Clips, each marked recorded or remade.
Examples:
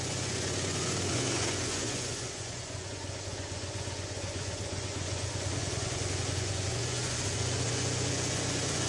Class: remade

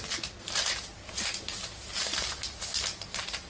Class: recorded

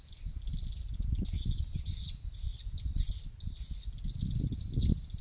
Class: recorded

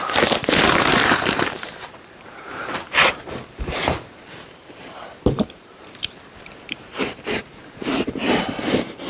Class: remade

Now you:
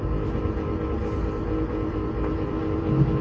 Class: recorded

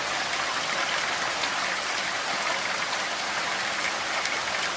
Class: recorded